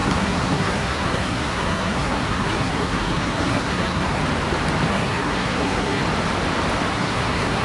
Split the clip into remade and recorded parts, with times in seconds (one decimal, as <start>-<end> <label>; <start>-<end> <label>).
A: 0.0-4.2 remade; 4.2-4.9 recorded; 4.9-6.0 remade; 6.0-6.9 recorded; 6.9-7.6 remade